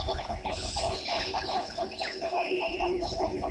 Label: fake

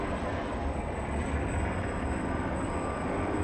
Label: fake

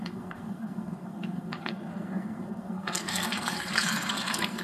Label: fake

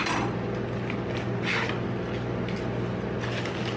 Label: real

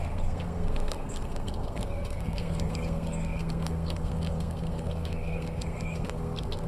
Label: fake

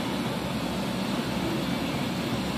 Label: real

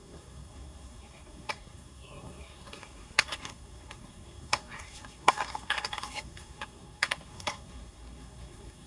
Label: fake